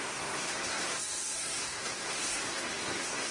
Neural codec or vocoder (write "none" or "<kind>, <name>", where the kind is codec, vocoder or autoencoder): codec, SNAC